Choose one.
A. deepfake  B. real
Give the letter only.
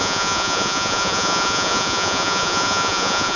A